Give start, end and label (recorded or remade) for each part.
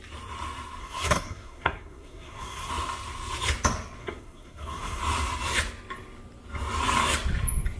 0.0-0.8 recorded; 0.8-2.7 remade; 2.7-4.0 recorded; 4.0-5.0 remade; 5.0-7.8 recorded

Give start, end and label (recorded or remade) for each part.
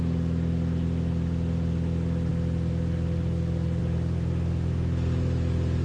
0.0-5.8 recorded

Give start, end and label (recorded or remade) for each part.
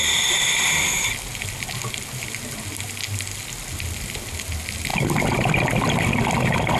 0.0-6.8 recorded